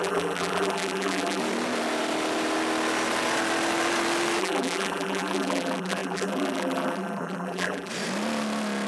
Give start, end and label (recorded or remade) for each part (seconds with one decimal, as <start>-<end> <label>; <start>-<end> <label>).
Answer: 0.0-1.4 remade; 1.4-4.4 recorded; 4.4-7.9 remade; 7.9-8.9 recorded